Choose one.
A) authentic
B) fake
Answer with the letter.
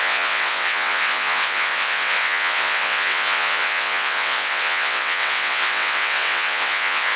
B